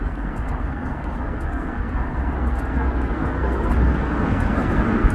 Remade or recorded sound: remade